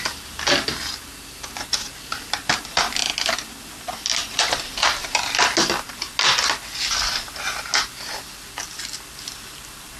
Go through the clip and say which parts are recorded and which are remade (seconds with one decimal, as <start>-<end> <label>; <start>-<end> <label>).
0.0-10.0 recorded